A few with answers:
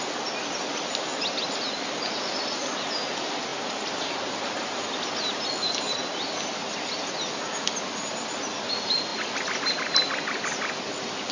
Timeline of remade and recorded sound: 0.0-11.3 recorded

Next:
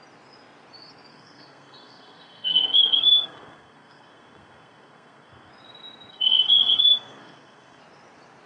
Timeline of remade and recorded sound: 0.0-1.1 recorded; 1.1-5.5 remade; 5.5-6.1 recorded; 6.1-7.8 remade; 7.8-8.5 recorded

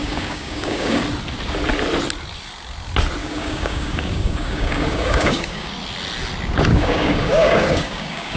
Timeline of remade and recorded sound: 0.0-1.0 remade; 1.0-3.2 recorded; 3.2-5.7 remade; 5.7-6.7 recorded; 6.7-8.4 remade

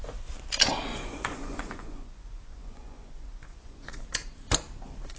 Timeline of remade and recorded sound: 0.0-0.9 recorded; 0.9-4.0 remade; 4.0-5.2 recorded

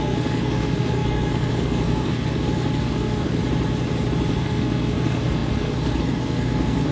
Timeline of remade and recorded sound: 0.0-3.4 remade; 3.4-4.3 recorded; 4.3-6.9 remade

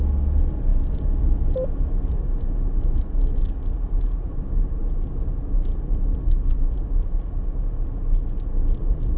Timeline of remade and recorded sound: 0.0-9.2 recorded

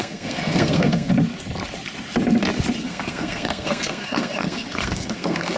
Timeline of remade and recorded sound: 0.0-1.1 remade; 1.1-2.8 recorded; 2.8-5.6 remade

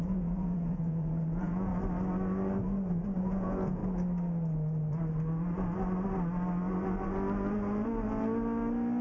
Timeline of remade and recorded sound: 0.0-1.7 remade; 1.7-3.2 recorded; 3.2-3.8 remade; 3.8-9.0 recorded